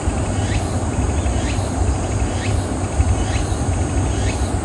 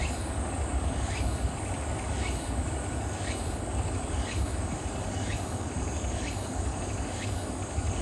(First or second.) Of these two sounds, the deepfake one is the second